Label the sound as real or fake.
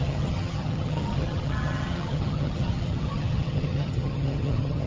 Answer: fake